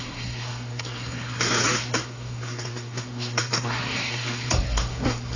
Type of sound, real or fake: fake